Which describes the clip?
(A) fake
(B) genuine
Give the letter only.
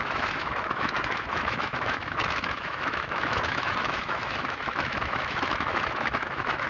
A